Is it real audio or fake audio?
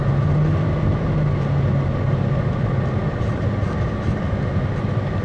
real